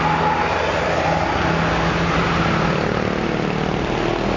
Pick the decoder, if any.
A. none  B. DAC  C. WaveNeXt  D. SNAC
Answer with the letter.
A